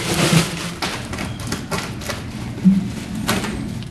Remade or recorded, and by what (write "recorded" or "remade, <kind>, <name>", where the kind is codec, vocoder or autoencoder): recorded